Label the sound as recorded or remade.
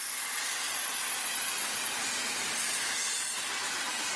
recorded